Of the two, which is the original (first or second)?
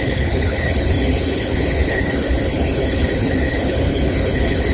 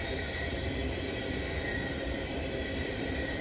second